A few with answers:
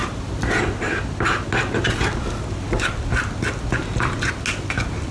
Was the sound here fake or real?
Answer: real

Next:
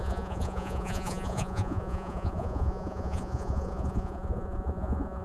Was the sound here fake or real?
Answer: fake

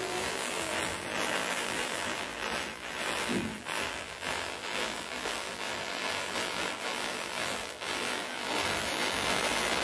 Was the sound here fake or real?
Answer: fake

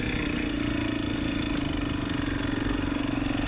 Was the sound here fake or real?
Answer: real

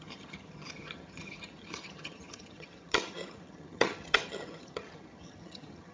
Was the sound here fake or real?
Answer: fake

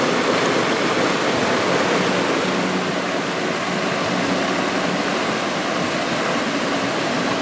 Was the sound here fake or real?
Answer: real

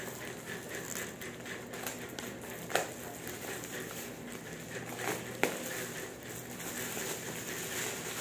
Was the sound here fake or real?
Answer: real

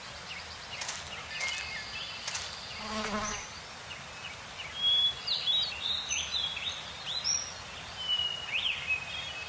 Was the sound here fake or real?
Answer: real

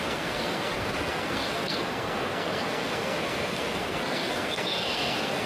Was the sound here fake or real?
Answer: fake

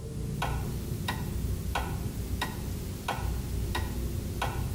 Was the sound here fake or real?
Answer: real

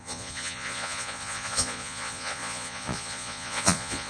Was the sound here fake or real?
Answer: fake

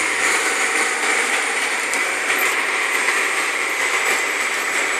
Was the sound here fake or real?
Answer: fake